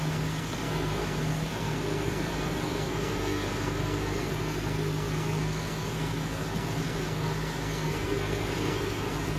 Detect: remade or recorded remade